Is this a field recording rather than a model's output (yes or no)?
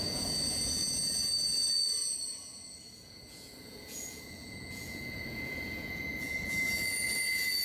no